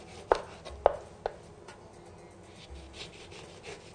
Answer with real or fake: real